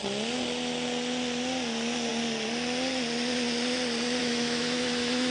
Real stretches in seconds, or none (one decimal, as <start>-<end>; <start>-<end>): 0.0-4.2